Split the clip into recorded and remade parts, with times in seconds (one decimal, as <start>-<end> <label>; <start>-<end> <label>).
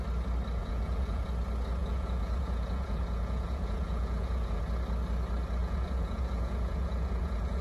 0.0-0.6 recorded; 0.6-1.3 remade; 1.3-1.8 recorded; 1.8-4.6 remade; 4.6-5.6 recorded; 5.6-7.6 remade